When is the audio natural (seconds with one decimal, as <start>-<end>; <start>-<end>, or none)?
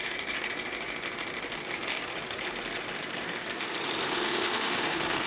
0.0-4.1